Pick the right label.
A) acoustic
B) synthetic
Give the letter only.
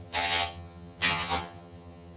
B